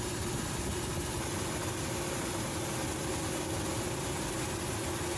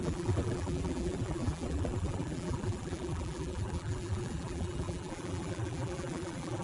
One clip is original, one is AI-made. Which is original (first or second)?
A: first